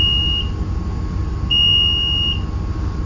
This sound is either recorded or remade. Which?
recorded